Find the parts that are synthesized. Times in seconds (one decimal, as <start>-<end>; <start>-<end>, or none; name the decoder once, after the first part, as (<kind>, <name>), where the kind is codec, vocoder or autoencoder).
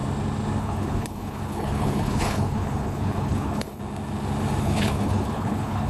0.6-3.8 (codec, HILCodec); 4.6-5.9